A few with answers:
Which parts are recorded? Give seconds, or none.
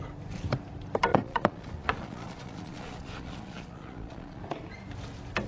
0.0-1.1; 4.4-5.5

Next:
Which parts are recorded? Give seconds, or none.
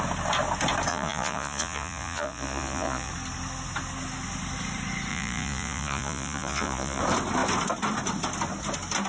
0.0-0.9; 3.1-5.1; 7.0-9.1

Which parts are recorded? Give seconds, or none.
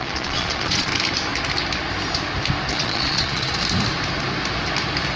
0.9-2.7; 3.5-5.2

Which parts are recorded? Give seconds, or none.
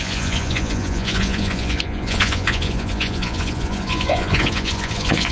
none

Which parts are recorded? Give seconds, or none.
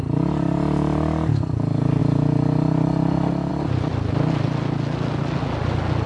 0.0-6.1